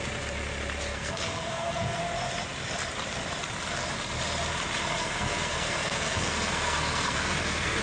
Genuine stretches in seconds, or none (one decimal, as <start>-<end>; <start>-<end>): 0.0-0.9; 2.0-5.0